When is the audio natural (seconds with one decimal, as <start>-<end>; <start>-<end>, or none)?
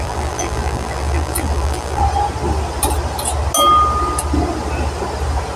2.0-5.6